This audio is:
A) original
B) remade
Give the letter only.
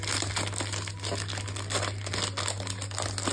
A